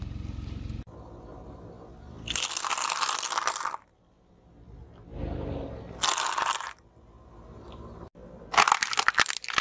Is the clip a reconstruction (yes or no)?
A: no